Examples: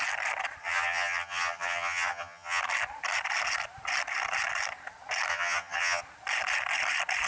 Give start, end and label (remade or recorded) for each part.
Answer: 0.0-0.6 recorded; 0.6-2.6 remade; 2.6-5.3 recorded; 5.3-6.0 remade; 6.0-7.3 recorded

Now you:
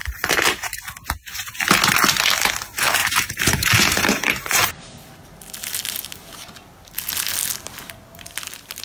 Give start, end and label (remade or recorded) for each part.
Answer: 0.0-0.8 remade; 0.8-3.0 recorded; 3.0-4.9 remade; 4.9-8.8 recorded

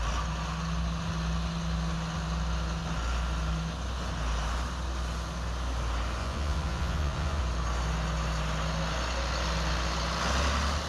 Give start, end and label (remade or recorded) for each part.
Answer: 0.0-6.2 recorded; 6.2-7.4 remade; 7.4-10.9 recorded

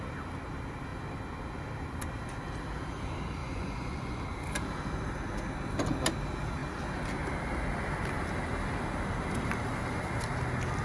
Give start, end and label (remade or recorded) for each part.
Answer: 0.0-3.4 recorded; 3.4-4.2 remade; 4.2-10.8 recorded